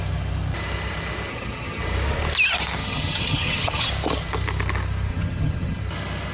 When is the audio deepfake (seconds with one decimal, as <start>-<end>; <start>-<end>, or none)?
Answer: 1.3-1.8; 2.8-3.9; 5.1-5.8

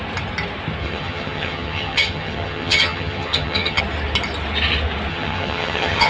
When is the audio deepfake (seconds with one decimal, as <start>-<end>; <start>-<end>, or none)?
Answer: 0.8-3.8; 5.1-6.1

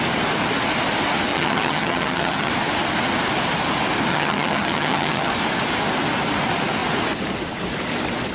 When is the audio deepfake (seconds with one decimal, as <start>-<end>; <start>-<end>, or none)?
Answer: 1.3-2.5; 4.1-5.3

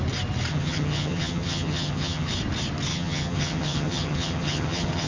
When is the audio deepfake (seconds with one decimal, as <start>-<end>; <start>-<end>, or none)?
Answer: 0.5-2.3; 2.9-5.1